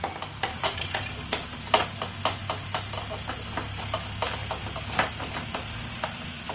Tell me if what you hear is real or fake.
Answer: real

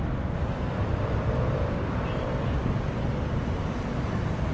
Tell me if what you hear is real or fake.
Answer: real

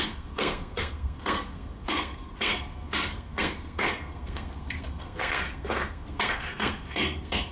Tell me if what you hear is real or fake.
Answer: fake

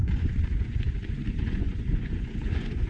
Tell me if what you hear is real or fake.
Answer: fake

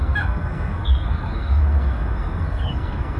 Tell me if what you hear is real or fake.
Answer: fake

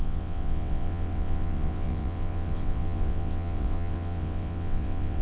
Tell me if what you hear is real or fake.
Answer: fake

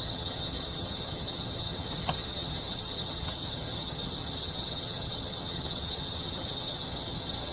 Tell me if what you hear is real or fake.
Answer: fake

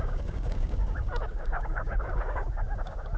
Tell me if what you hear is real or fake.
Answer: fake